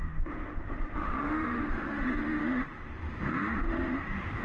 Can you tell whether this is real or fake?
fake